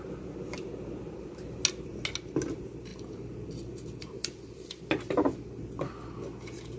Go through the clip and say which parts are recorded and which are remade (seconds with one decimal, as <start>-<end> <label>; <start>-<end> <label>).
0.0-2.9 recorded; 2.9-4.8 remade; 4.8-6.8 recorded